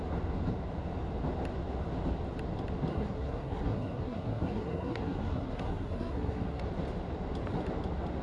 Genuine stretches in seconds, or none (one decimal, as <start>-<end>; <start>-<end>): 0.0-2.9; 6.6-8.2